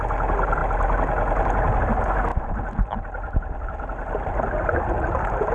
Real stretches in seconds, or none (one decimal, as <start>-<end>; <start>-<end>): 0.0-5.5